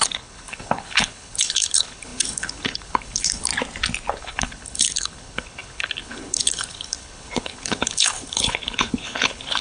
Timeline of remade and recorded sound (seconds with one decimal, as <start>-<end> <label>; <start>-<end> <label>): 0.0-3.5 remade; 3.5-4.1 recorded; 4.1-9.6 remade